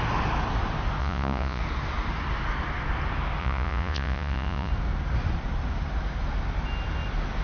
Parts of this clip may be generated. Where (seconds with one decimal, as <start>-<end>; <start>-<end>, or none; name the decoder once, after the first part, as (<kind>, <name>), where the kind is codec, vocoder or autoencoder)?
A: 1.0-1.6 (vocoder, Vocos); 3.4-4.7